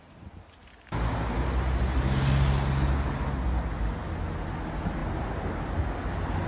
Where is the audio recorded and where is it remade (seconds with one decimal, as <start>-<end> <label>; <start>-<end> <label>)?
0.0-6.5 recorded